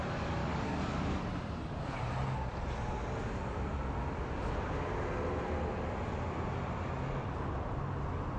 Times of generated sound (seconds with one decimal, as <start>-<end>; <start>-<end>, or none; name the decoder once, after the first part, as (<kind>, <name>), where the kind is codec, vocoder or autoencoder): 0.4-1.2 (codec, DAC)